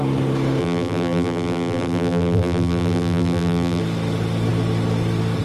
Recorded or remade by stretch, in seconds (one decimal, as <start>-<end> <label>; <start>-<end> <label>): 0.0-0.6 recorded; 0.6-3.8 remade; 3.8-5.4 recorded